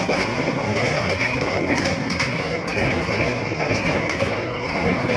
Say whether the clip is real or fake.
fake